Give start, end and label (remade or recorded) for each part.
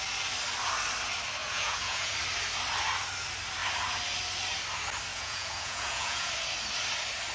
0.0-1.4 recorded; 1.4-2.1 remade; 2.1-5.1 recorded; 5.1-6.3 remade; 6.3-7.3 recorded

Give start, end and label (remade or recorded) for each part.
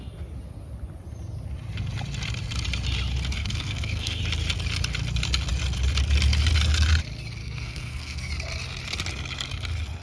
0.0-3.4 recorded; 3.4-4.2 remade; 4.2-7.4 recorded; 7.4-8.3 remade; 8.3-10.0 recorded